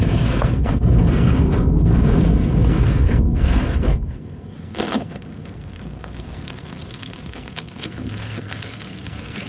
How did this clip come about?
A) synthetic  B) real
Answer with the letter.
A